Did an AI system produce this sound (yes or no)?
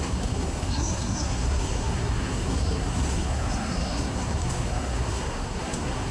yes